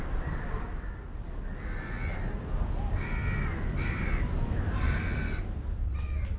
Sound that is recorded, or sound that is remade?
recorded